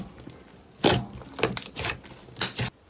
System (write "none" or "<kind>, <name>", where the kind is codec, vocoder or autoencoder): none